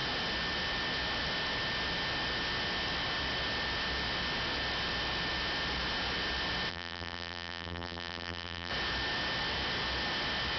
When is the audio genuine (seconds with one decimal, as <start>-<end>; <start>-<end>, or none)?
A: 0.0-6.7; 8.7-10.6